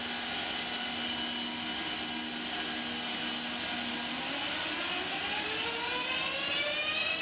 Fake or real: real